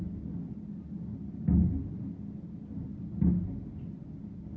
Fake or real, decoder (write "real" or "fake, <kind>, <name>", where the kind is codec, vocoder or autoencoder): real